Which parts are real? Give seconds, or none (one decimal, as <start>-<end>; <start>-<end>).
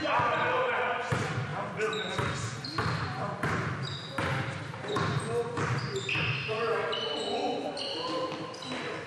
0.0-9.1